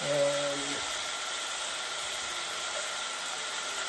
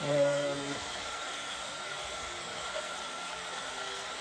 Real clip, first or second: first